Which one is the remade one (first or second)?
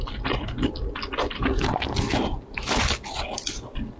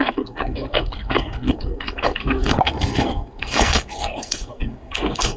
second